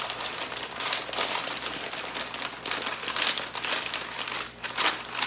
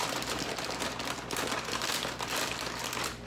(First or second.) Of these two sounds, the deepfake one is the second